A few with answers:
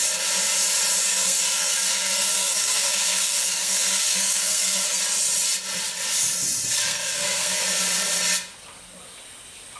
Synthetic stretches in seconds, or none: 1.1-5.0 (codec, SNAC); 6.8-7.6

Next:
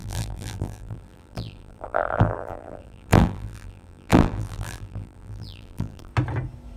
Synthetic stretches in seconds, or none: 0.0-6.1 (vocoder, BigVGAN v2)

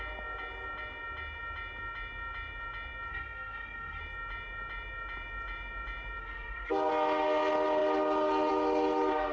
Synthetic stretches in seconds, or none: 3.1-4.0 (codec, SNAC); 6.2-6.9

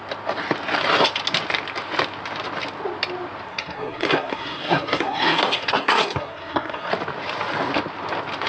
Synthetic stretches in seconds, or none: 3.5-6.9 (codec, SNAC)

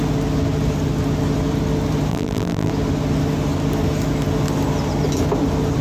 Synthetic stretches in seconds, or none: 2.1-2.7 (vocoder, BigVGAN v2)

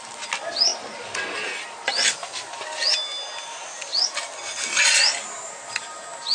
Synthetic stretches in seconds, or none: none